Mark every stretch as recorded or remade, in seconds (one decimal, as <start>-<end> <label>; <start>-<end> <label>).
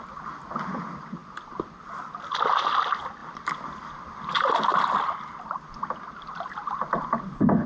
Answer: 0.0-7.7 recorded